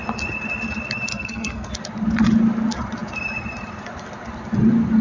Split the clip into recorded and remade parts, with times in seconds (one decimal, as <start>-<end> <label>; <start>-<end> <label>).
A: 0.0-1.1 recorded; 1.1-1.7 remade; 1.7-5.0 recorded